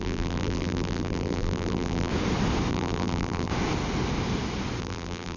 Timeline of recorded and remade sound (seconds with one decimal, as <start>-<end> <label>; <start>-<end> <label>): 0.0-2.1 remade; 2.1-2.7 recorded; 2.7-3.5 remade; 3.5-4.8 recorded; 4.8-5.4 remade